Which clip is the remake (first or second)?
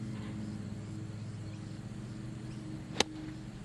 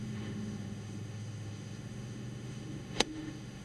second